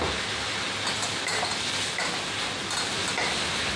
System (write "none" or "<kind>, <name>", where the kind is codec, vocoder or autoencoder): none